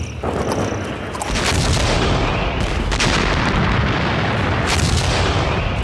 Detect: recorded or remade recorded